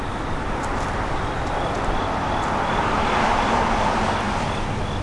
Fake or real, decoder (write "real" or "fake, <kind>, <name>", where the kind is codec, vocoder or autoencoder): real